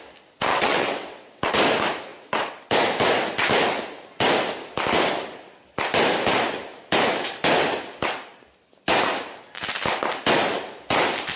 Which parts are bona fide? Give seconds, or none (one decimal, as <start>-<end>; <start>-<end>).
0.0-0.5; 1.4-2.1; 2.6-11.4